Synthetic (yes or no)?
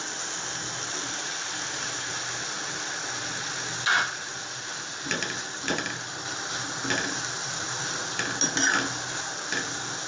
no